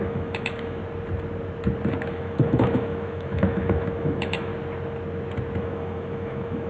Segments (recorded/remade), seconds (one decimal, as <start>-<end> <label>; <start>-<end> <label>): 0.0-0.8 remade; 0.8-2.1 recorded; 2.1-4.5 remade; 4.5-5.6 recorded; 5.6-6.7 remade